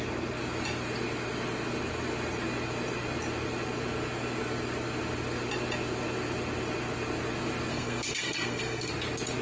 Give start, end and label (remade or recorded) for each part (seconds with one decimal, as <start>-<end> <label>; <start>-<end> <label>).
0.0-7.7 recorded; 7.7-8.9 remade; 8.9-9.4 recorded